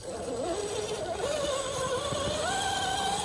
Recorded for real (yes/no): yes